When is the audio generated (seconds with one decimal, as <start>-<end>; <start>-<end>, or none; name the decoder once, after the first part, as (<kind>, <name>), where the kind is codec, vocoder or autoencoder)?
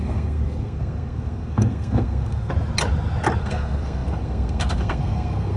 0.0-2.5 (codec, SNAC); 3.4-5.6